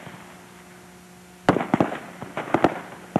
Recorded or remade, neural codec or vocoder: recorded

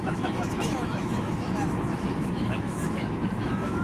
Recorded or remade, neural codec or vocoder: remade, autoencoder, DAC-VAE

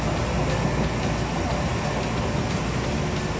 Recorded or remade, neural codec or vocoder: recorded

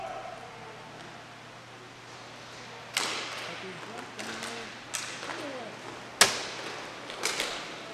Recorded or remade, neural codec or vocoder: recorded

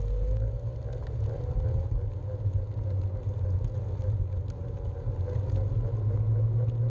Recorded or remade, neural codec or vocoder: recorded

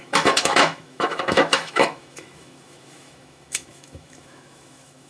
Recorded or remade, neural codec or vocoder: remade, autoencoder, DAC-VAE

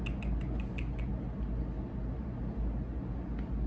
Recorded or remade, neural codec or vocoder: recorded